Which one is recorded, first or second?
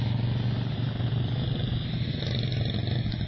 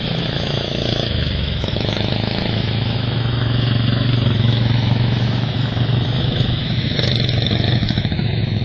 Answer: first